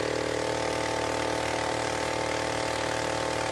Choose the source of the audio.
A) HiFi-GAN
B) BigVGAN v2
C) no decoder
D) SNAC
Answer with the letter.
C